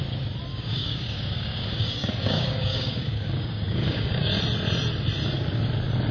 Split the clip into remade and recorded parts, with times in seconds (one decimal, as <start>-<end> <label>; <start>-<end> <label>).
0.0-0.5 recorded; 0.5-4.2 remade; 4.2-6.1 recorded